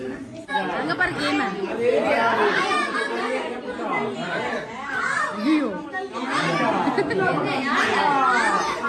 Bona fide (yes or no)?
yes